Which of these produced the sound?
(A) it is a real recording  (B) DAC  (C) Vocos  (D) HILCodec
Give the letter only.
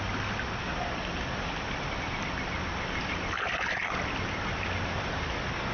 A